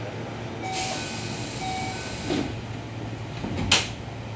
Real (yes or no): yes